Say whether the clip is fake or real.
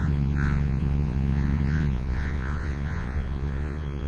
fake